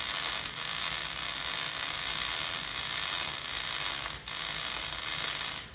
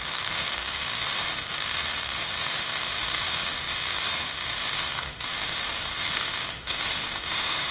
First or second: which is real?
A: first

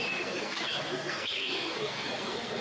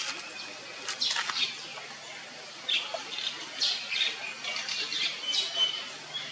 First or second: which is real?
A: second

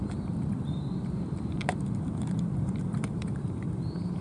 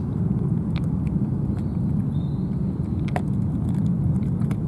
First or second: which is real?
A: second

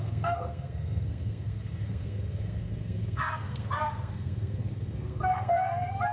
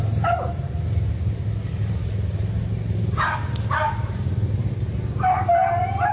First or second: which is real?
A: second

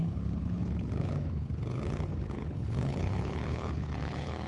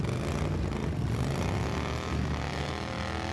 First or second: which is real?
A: second